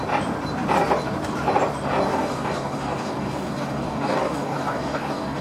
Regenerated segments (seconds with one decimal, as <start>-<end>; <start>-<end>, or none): 2.1-5.4